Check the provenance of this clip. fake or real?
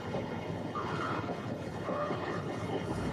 fake